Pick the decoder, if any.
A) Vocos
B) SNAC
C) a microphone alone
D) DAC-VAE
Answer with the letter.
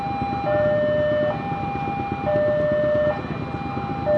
C